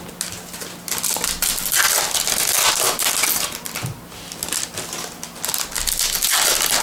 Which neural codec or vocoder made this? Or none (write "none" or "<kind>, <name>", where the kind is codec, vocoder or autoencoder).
none